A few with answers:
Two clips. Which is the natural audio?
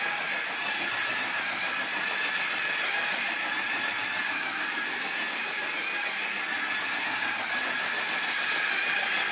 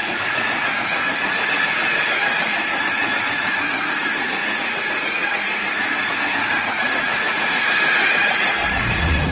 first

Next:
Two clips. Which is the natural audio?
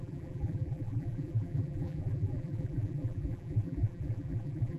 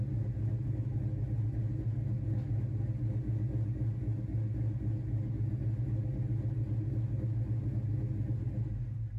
second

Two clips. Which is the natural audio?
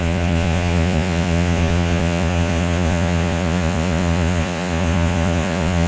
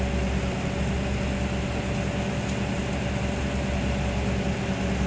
second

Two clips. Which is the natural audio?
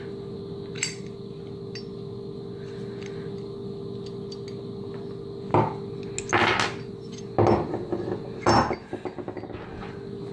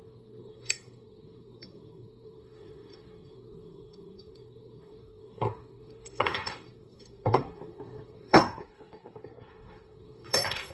first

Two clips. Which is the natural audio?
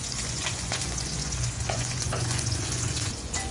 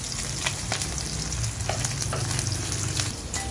second